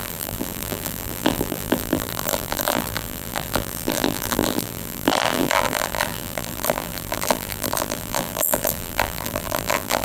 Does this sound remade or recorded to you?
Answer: remade